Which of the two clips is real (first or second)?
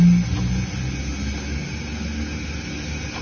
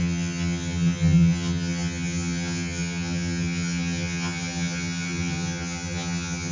first